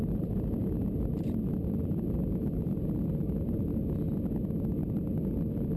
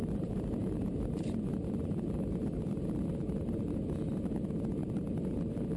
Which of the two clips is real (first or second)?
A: first